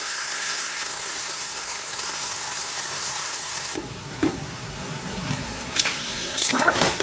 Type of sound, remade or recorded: remade